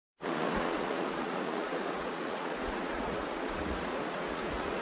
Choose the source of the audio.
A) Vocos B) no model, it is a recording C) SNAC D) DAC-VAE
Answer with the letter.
A